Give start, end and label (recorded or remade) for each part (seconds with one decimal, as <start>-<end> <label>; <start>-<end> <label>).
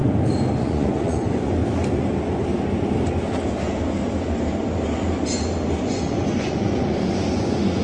0.0-0.6 recorded; 0.6-1.6 remade; 1.6-5.8 recorded; 5.8-7.8 remade